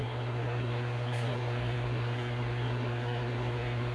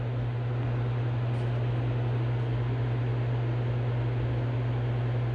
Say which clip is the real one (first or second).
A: second